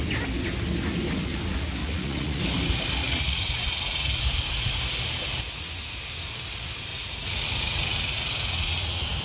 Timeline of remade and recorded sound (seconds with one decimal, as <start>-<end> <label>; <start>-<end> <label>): 0.0-1.8 recorded; 1.8-2.4 remade; 2.4-3.0 recorded; 3.0-4.2 remade; 4.2-6.9 recorded; 6.9-9.2 remade